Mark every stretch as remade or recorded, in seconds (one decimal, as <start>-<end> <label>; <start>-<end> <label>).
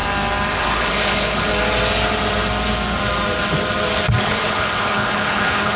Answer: 0.0-0.5 recorded; 0.5-1.5 remade; 1.5-4.2 recorded; 4.2-5.8 remade